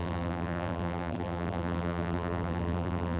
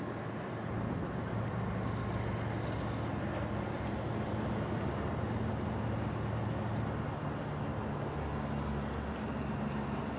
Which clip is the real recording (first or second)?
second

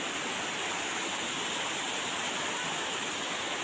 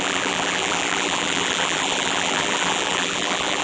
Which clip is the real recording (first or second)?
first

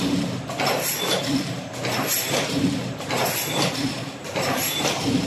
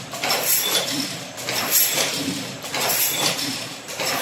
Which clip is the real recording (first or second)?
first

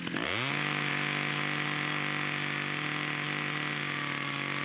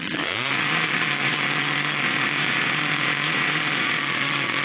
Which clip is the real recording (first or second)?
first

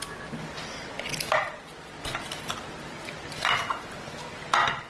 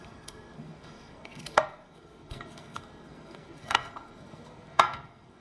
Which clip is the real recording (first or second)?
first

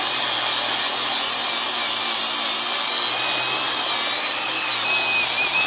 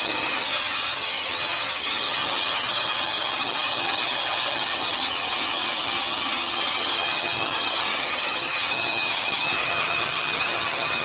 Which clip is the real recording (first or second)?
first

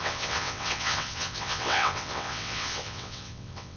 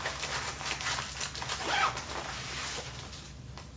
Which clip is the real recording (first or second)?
second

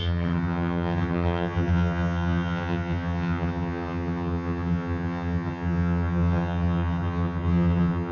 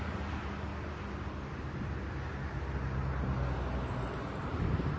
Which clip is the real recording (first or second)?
second